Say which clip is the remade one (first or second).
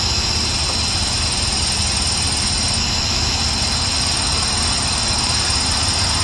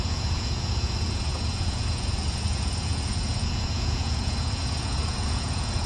second